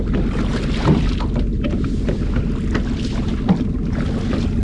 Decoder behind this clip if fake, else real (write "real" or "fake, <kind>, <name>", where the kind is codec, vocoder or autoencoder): real